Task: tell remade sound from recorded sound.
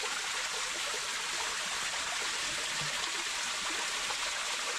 recorded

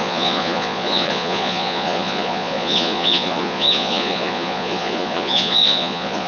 remade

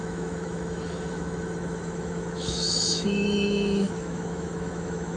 remade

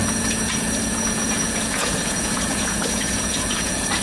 remade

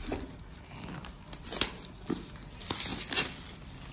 recorded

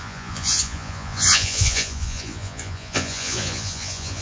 remade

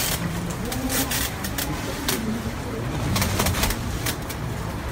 remade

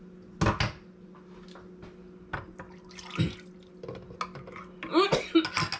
recorded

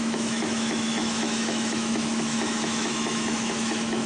remade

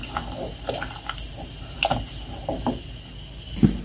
recorded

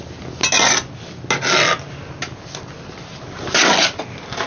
recorded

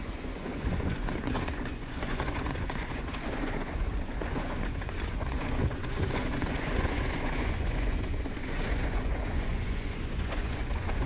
remade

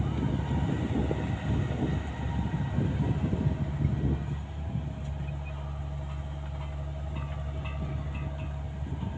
recorded